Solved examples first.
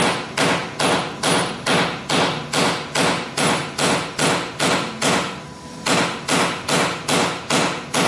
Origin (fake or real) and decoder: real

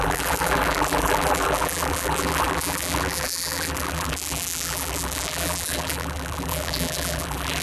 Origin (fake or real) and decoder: fake, vocoder, BigVGAN v2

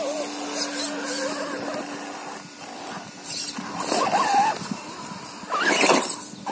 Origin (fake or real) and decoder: real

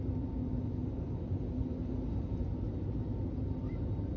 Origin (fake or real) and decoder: real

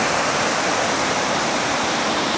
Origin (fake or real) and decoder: real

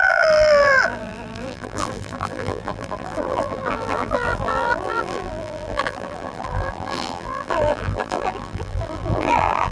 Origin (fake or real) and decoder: fake, vocoder, BigVGAN v2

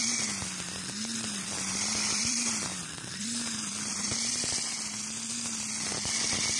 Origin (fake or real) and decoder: fake, vocoder, BigVGAN v2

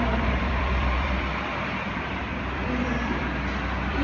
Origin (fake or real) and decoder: fake, vocoder, BigVGAN v2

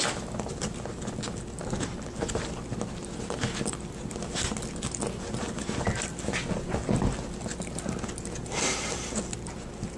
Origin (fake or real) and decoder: real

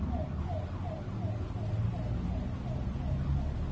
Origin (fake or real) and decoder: real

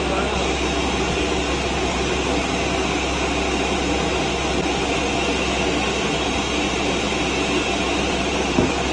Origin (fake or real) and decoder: real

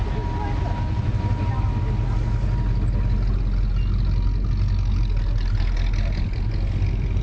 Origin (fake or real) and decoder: real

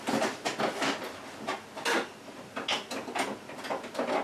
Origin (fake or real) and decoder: real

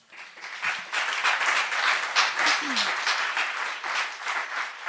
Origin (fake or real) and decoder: real